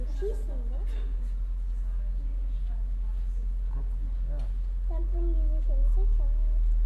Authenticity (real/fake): real